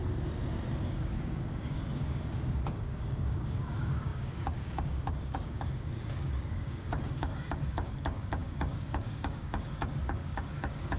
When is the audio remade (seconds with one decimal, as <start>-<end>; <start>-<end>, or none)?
0.9-11.0